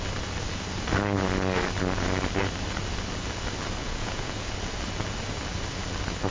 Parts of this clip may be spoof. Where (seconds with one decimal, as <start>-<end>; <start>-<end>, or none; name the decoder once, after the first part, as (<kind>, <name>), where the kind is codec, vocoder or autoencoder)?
3.8-4.5 (vocoder, Vocos)